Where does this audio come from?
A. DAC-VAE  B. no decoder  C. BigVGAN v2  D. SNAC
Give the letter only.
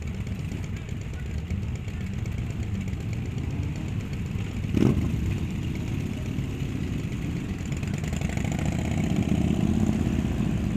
B